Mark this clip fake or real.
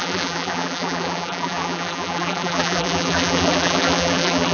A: fake